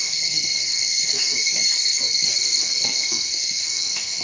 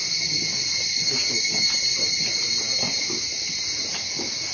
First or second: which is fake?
first